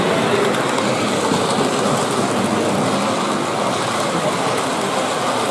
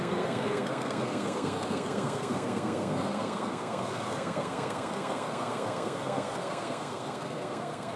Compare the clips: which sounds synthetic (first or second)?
second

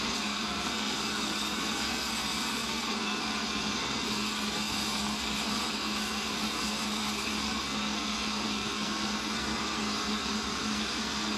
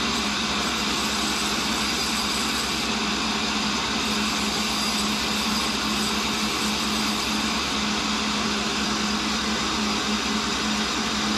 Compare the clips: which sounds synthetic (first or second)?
first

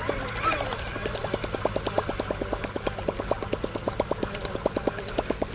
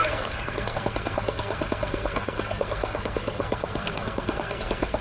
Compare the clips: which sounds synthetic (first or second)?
second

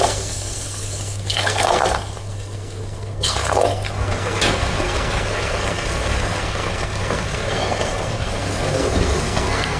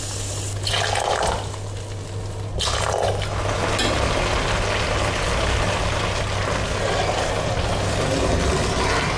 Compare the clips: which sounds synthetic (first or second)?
first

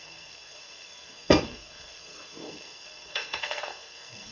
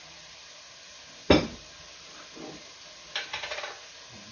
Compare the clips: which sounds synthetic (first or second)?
first